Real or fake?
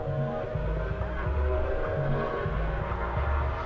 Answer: real